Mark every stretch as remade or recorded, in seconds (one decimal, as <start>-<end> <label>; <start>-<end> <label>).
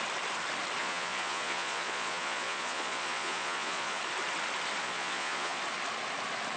0.0-0.8 recorded; 0.8-4.0 remade; 4.0-4.8 recorded; 4.8-5.6 remade; 5.6-6.6 recorded